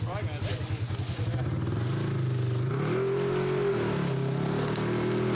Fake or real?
real